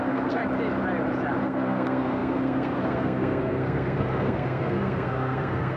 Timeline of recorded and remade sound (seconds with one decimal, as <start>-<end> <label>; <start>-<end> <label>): 0.0-0.4 remade; 0.4-1.4 recorded; 1.4-5.8 remade